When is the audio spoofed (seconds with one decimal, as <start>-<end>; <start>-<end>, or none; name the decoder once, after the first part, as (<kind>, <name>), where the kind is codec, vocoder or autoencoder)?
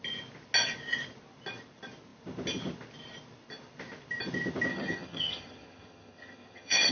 4.7-6.9 (vocoder, HiFi-GAN)